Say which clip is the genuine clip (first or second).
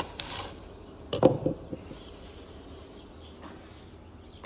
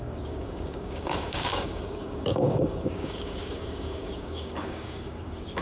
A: first